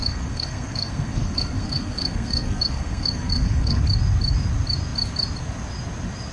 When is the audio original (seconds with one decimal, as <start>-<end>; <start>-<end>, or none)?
3.8-6.3